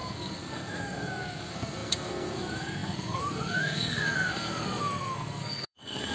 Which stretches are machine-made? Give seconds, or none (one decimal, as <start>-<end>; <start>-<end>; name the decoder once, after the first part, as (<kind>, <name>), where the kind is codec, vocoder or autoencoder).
0.0-6.1 (codec, SNAC)